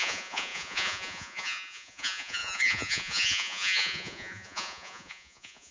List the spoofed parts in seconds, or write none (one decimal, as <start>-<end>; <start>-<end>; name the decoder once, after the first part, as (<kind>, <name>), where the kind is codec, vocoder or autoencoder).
0.0-5.7 (vocoder, Vocos)